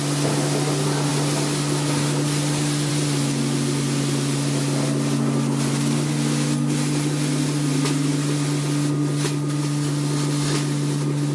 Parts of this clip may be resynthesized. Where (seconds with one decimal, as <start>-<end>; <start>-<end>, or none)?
none